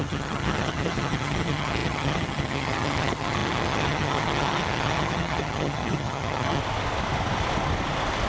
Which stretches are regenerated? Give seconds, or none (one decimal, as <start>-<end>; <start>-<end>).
0.0-6.6